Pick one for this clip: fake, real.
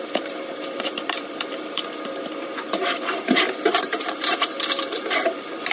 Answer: fake